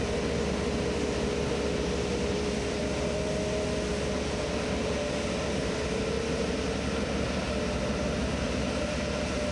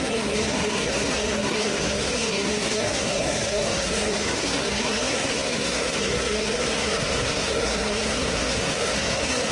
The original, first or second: first